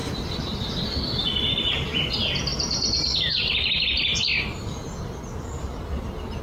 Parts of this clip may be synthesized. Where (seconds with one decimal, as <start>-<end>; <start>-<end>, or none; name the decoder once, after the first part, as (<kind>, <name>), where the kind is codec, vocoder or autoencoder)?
none